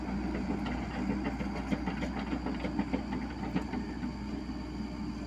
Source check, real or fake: real